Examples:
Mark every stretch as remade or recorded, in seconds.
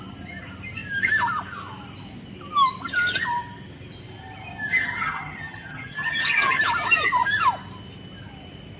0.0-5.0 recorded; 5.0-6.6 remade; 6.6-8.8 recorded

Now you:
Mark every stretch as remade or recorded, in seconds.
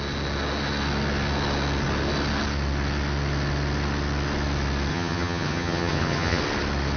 0.0-4.9 recorded; 4.9-6.4 remade; 6.4-7.0 recorded